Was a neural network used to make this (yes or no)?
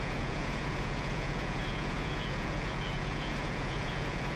yes